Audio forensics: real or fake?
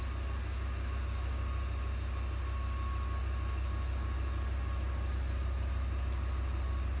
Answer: real